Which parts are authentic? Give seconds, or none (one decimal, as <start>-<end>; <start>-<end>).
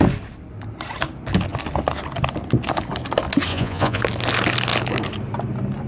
0.0-3.5; 4.0-5.9